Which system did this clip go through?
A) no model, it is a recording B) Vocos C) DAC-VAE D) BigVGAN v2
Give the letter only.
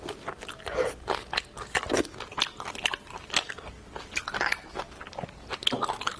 A